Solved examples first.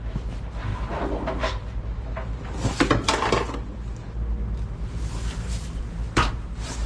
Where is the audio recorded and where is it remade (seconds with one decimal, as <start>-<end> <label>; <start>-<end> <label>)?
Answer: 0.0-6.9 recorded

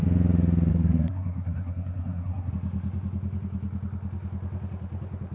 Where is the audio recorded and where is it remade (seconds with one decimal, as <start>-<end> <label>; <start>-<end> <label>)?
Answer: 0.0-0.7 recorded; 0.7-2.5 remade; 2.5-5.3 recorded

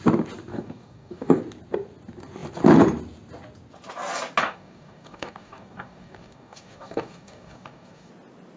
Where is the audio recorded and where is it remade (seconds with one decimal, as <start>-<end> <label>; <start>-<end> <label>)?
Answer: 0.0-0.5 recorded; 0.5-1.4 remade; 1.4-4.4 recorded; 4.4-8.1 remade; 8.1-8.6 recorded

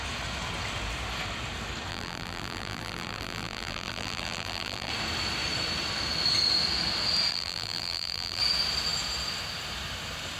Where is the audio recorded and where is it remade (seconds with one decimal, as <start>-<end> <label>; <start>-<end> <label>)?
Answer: 0.0-1.9 recorded; 1.9-4.9 remade; 4.9-7.3 recorded; 7.3-8.4 remade; 8.4-10.4 recorded